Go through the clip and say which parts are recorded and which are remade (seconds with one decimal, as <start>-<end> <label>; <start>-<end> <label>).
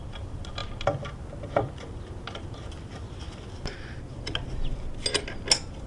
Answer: 0.0-5.9 recorded